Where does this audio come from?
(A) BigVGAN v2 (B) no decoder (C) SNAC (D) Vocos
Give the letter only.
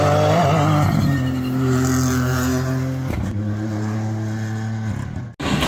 B